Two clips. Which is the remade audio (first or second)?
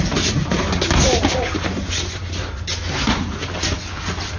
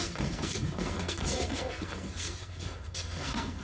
second